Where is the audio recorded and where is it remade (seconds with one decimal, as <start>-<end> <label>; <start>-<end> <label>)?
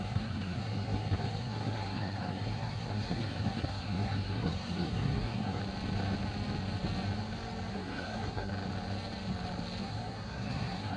0.0-5.6 remade; 5.6-7.7 recorded; 7.7-8.5 remade; 8.5-9.8 recorded; 9.8-11.0 remade